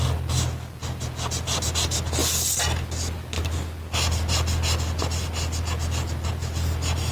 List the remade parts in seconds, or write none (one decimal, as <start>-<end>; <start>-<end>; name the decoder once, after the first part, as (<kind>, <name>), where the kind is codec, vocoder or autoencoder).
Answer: none